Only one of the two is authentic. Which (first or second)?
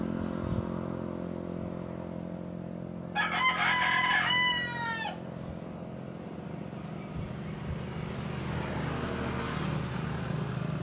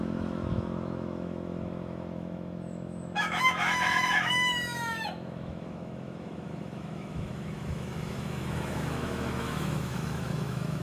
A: first